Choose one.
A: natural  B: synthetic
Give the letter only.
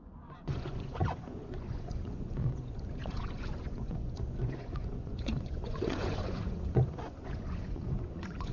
B